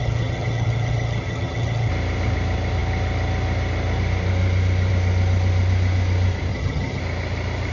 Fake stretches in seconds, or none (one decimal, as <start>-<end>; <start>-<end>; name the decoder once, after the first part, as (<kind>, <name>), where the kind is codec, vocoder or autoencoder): 0.0-1.9 (vocoder, HiFi-GAN); 6.5-7.0